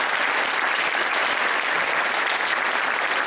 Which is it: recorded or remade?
recorded